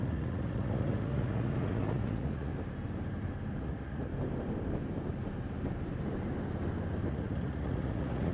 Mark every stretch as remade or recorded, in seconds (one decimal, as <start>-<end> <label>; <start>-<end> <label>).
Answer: 0.0-2.5 remade; 2.5-3.6 recorded; 3.6-4.1 remade; 4.1-7.1 recorded; 7.1-8.3 remade